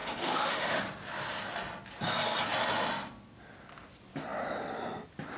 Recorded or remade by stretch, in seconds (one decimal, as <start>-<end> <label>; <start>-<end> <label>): 0.0-0.8 remade; 0.8-5.4 recorded